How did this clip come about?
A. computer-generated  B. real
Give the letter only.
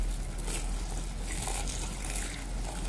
B